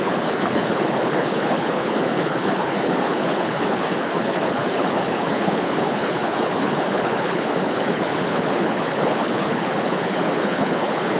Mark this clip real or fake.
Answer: fake